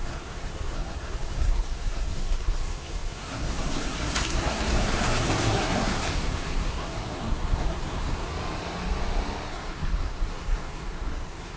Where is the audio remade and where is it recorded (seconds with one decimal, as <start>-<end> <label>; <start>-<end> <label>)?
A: 0.0-8.3 remade; 8.3-9.5 recorded; 9.5-11.6 remade